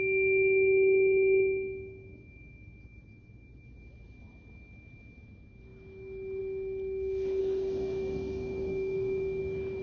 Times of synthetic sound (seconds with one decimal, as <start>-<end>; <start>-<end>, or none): 7.4-9.4

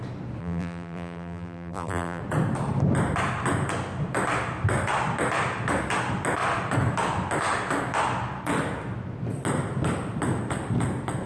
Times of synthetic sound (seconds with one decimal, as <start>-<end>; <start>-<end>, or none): 0.4-2.2

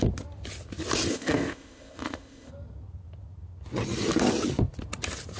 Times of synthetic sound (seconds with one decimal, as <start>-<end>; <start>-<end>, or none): 1.1-2.5